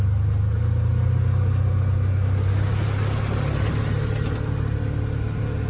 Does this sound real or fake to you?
real